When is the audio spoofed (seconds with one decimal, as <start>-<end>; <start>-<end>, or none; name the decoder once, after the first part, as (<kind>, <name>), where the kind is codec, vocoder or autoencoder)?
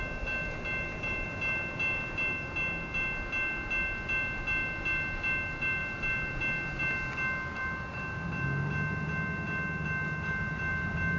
none